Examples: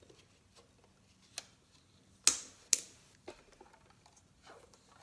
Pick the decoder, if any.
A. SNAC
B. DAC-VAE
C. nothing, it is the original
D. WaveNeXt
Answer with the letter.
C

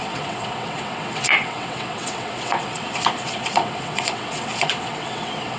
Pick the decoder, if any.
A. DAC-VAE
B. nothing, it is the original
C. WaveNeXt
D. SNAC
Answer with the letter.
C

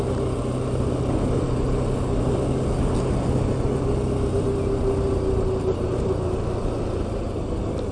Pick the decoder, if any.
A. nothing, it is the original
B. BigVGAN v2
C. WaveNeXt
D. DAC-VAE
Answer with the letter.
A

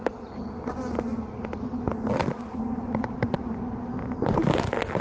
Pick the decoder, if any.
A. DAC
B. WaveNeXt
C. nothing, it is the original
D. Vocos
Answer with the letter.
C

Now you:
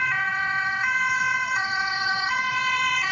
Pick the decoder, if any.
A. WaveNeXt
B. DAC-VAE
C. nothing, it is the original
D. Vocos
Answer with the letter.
A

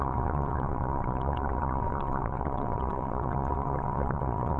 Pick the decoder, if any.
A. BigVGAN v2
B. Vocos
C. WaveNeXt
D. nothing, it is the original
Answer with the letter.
C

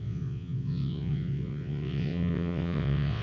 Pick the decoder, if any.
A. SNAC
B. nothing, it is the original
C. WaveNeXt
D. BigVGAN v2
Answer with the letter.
C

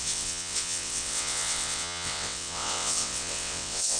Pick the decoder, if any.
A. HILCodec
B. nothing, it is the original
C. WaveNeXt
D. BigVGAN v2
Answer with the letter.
C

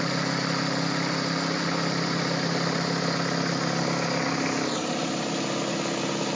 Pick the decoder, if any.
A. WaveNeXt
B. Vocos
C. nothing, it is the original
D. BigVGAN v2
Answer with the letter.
C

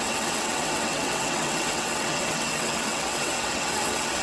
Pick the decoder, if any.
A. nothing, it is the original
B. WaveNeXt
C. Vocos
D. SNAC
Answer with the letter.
B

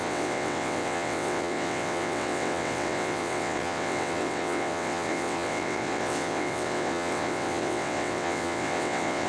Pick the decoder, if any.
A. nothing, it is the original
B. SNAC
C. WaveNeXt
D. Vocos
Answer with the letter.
C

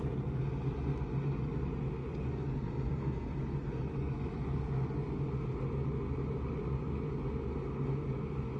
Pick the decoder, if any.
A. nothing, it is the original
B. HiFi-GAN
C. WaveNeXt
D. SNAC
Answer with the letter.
A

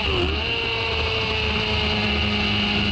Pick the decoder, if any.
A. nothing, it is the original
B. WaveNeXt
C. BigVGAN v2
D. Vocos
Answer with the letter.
A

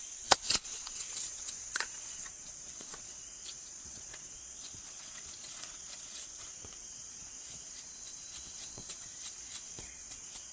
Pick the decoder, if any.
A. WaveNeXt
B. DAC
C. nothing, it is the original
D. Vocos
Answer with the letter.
A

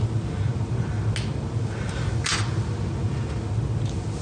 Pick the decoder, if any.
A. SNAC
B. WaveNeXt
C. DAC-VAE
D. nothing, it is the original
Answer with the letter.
D